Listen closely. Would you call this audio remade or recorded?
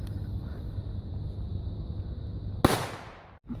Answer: recorded